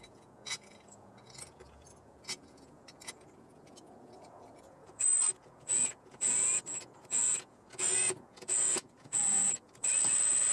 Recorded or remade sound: remade